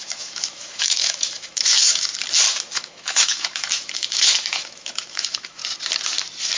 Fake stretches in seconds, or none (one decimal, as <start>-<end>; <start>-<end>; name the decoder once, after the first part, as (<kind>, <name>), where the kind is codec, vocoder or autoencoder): 0.0-2.1 (autoencoder, DAC-VAE); 2.6-5.6